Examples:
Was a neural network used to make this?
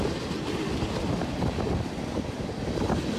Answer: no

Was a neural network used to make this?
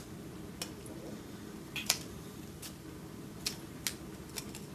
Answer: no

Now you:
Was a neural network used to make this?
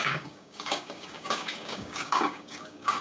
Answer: yes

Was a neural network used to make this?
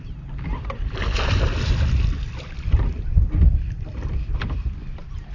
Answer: no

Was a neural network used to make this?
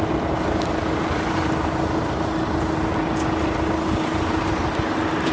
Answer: no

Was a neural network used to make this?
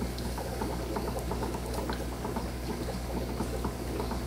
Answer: yes